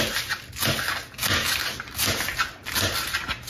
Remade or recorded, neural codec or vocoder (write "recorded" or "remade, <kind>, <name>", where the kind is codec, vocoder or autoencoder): recorded